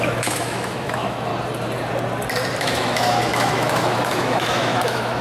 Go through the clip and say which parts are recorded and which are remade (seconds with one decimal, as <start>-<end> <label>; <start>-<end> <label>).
0.0-1.3 remade; 1.3-2.6 recorded; 2.6-5.2 remade